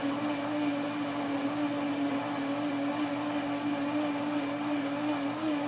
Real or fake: real